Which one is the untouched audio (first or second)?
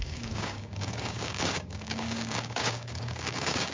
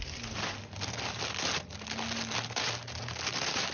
second